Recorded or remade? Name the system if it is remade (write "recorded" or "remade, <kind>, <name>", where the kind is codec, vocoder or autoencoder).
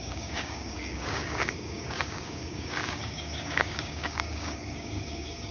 remade, codec, DAC